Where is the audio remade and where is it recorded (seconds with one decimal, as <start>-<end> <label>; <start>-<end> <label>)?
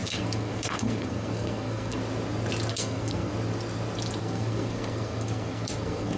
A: 0.0-2.0 remade; 2.0-2.7 recorded; 2.7-3.3 remade; 3.3-4.2 recorded; 4.2-6.2 remade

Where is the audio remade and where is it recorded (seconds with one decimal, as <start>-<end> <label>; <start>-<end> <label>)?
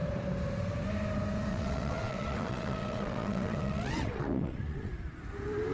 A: 0.0-1.5 recorded; 1.5-4.9 remade; 4.9-5.7 recorded